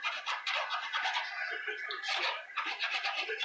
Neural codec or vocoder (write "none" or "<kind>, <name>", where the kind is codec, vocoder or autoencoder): vocoder, BigVGAN v2